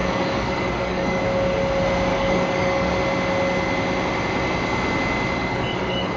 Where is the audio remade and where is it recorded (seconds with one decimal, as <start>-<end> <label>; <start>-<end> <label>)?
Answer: 0.0-1.2 remade; 1.2-2.1 recorded; 2.1-2.9 remade; 2.9-5.4 recorded; 5.4-6.2 remade